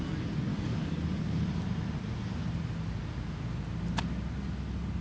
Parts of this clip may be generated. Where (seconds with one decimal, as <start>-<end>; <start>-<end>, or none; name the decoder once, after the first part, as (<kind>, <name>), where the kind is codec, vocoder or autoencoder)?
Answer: 0.5-1.0 (codec, DAC)